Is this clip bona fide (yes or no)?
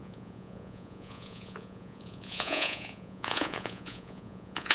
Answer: no